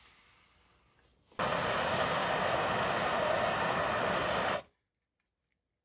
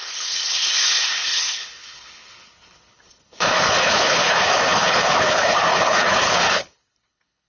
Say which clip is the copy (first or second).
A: second